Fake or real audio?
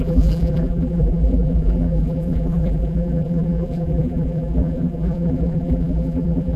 fake